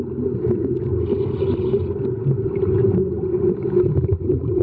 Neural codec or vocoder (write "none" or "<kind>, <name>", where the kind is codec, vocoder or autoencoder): none